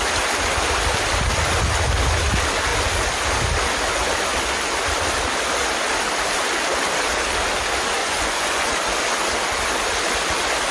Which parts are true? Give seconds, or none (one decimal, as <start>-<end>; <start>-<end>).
0.0-8.0; 8.7-10.7